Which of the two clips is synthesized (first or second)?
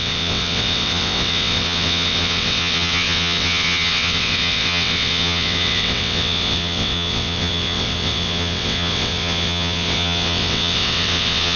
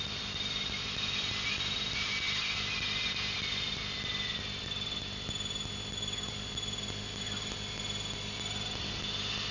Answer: first